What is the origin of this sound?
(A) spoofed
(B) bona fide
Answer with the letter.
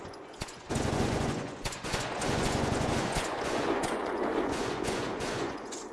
A